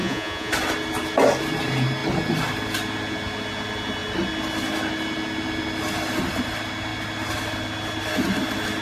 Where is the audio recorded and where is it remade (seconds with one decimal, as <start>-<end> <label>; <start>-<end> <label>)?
0.0-0.5 remade; 0.5-8.8 recorded

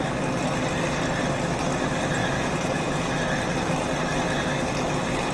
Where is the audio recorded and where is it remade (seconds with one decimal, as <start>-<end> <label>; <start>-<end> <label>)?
0.0-2.2 recorded; 2.2-3.1 remade; 3.1-5.3 recorded

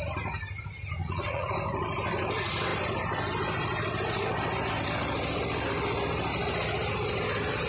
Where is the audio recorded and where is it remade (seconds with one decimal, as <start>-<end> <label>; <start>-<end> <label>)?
0.0-1.0 recorded; 1.0-1.5 remade; 1.5-7.7 recorded

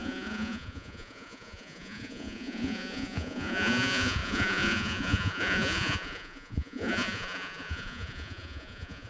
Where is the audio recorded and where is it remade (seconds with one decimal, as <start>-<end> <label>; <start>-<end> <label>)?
0.0-9.1 remade

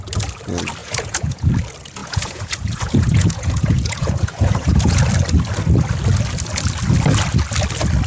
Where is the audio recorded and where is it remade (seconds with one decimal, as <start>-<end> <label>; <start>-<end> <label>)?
0.0-0.8 recorded; 0.8-1.5 remade; 1.5-2.0 recorded; 2.0-5.0 remade; 5.0-8.1 recorded

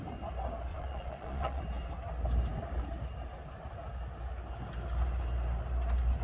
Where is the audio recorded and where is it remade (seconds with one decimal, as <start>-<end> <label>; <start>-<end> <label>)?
0.0-0.7 recorded; 0.7-1.6 remade; 1.6-6.2 recorded

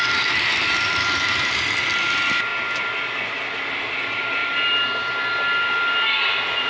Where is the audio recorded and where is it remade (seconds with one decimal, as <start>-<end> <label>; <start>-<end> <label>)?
0.0-6.7 recorded